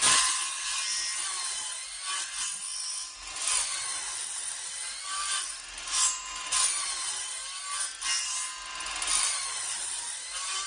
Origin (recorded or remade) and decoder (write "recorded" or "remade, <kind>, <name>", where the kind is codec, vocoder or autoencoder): recorded